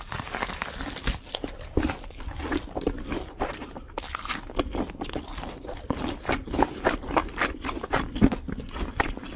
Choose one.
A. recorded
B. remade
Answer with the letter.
A